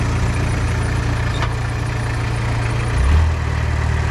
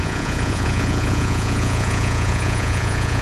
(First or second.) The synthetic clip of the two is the second